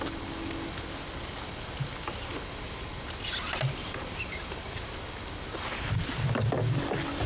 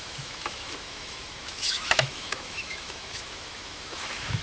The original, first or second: first